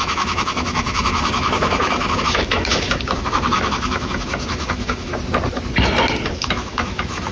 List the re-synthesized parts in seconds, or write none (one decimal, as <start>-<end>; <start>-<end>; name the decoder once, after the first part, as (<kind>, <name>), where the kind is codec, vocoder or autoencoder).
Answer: 0.0-5.1 (autoencoder, DAC-VAE); 6.3-7.3

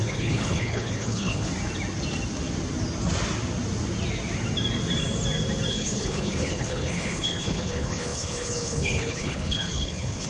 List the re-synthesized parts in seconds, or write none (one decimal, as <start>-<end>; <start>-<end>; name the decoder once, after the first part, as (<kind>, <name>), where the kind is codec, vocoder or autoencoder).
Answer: 0.0-1.5 (codec, HILCodec); 5.7-10.3

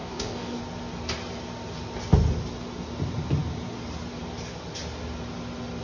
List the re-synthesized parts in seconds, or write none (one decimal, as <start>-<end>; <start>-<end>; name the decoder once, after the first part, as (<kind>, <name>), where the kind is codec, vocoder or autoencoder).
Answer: 0.0-0.6 (codec, DAC)

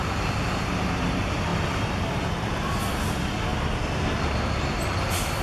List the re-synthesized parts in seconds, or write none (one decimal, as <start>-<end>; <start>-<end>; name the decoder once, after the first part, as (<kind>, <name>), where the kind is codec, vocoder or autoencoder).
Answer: 1.5-2.2 (vocoder, BigVGAN v2)

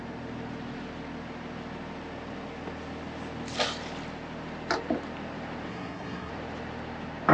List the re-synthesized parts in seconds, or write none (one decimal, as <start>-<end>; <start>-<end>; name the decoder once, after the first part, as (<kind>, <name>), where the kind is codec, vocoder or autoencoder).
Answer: 5.7-6.3 (codec, SNAC)

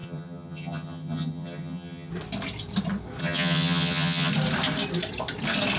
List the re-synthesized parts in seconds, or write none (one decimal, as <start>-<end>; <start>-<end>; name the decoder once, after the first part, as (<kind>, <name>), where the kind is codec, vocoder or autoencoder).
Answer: 0.0-2.1 (vocoder, HiFi-GAN); 3.2-4.3